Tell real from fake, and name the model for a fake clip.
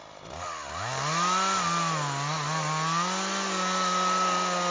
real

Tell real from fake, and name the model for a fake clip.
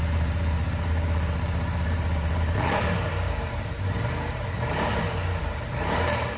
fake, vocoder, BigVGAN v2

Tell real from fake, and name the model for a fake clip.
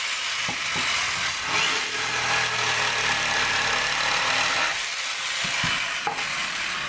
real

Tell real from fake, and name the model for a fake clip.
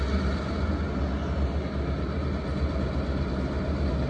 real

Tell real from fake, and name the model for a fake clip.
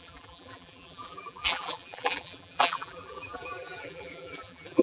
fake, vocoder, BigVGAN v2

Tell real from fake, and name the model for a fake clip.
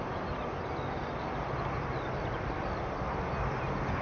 real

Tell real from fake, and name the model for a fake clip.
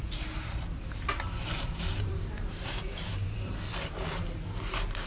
fake, vocoder, BigVGAN v2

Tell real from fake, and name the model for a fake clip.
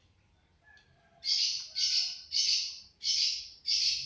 real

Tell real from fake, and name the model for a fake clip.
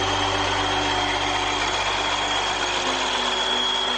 real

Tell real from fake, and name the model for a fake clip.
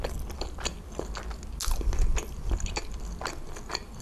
real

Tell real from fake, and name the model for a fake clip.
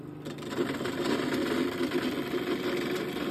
real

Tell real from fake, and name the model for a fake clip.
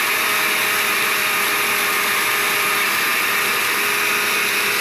real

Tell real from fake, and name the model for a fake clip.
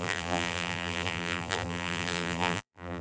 fake, vocoder, BigVGAN v2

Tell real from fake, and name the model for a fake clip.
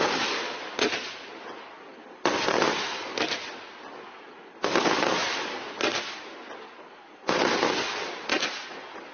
real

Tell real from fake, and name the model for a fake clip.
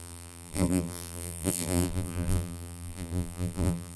fake, vocoder, BigVGAN v2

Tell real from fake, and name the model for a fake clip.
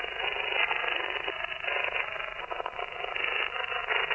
real